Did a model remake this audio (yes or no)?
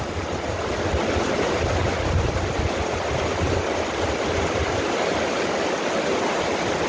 no